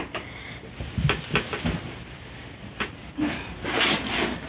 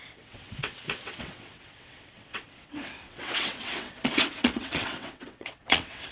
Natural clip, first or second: first